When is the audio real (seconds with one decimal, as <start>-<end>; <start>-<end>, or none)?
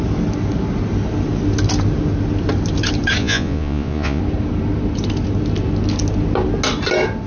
0.0-3.2; 4.2-7.3